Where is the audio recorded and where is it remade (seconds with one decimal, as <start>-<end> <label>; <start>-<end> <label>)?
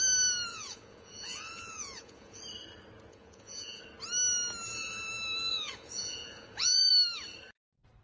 0.0-0.5 recorded; 0.5-2.4 remade; 2.4-3.1 recorded; 3.1-3.8 remade; 3.8-5.5 recorded; 5.5-6.9 remade; 6.9-8.0 recorded